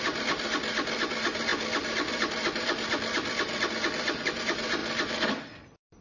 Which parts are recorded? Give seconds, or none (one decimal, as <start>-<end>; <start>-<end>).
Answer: 4.8-5.4